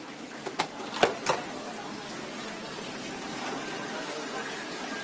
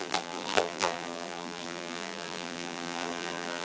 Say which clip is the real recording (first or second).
first